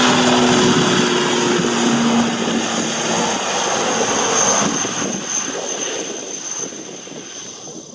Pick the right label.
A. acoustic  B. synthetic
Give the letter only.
A